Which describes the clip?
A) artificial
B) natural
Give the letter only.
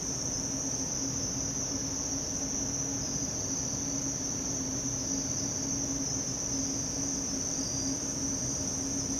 B